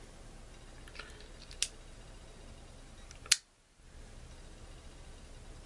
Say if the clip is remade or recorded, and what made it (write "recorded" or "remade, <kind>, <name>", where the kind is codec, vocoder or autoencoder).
recorded